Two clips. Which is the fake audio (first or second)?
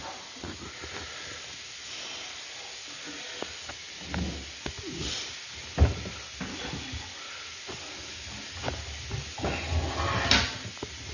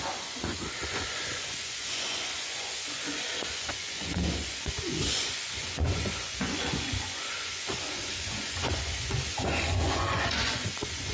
second